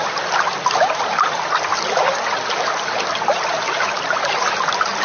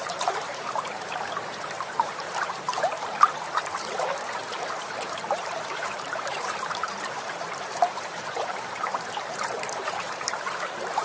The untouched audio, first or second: first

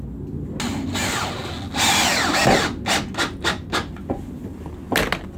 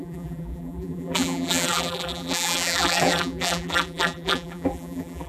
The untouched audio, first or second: first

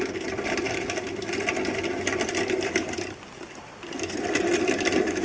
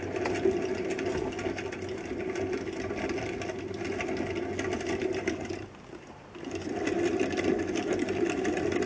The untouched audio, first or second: second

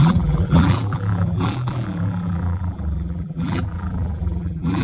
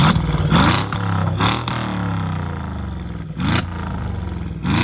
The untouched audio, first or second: second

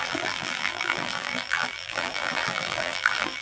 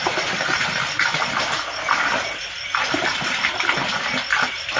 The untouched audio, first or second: second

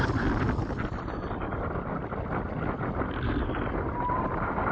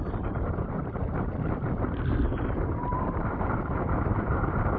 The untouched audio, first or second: first